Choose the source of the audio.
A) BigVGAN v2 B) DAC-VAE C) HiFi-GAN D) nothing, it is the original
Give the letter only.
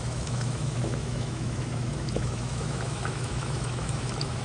B